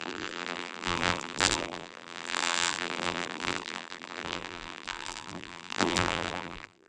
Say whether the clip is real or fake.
fake